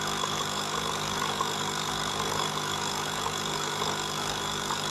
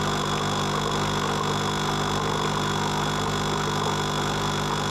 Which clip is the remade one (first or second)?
first